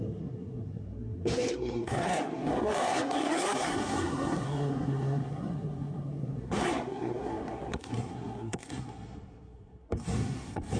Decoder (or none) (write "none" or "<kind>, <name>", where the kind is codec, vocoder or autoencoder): codec, SNAC